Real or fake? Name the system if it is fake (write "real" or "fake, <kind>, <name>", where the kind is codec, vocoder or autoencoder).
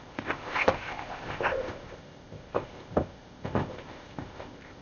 fake, codec, ZipCodec